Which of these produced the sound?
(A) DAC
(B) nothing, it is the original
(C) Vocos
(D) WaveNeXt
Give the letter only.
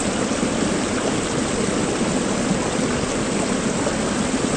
B